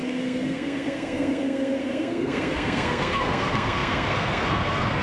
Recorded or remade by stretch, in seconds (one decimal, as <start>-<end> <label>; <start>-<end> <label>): 0.0-5.0 remade